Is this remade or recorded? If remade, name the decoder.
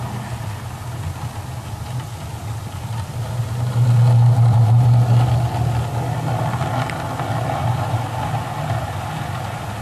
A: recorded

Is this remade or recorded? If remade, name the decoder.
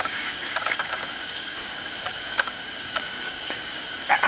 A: remade, codec, DAC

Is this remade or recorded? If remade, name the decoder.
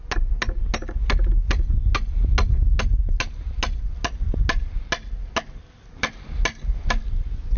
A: recorded